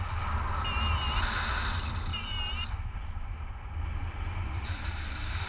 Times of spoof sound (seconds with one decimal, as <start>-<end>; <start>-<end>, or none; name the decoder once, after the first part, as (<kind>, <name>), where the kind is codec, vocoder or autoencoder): 2.1-3.3 (vocoder, BigVGAN v2); 4.0-5.5